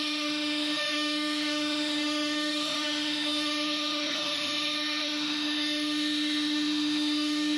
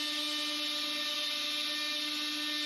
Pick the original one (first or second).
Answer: second